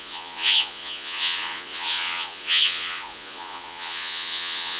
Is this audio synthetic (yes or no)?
yes